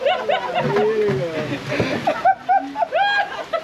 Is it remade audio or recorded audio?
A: recorded